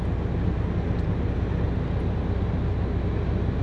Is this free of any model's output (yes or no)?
yes